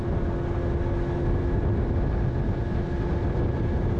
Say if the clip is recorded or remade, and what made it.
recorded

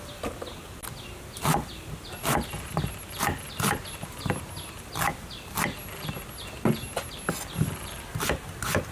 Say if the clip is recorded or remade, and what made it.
recorded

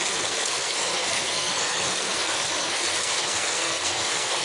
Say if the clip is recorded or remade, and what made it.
remade, codec, SNAC